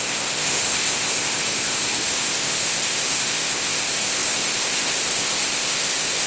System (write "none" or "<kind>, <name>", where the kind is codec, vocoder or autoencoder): codec, ZipCodec